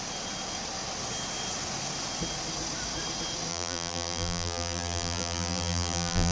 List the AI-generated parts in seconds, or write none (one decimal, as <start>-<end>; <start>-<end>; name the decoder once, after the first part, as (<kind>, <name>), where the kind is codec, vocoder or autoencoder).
3.5-6.3 (vocoder, BigVGAN v2)